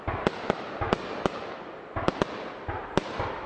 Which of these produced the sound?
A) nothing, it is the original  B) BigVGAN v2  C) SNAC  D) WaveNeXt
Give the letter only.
B